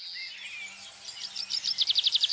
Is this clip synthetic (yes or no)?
no